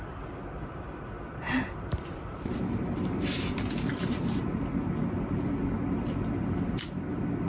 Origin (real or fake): fake